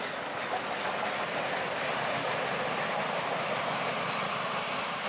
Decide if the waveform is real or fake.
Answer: real